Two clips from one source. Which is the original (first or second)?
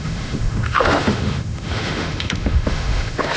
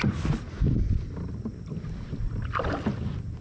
second